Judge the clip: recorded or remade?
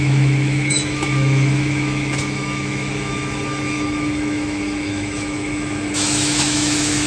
remade